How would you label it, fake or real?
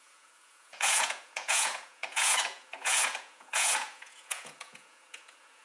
fake